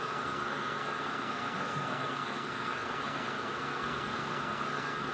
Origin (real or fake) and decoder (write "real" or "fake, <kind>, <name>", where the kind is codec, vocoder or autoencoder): fake, codec, SNAC